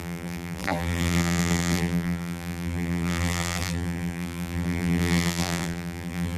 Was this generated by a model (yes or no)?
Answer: yes